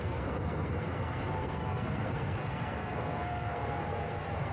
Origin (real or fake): fake